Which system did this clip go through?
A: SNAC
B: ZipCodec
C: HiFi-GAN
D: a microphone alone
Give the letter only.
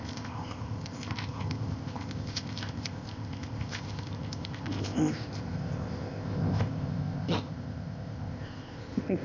B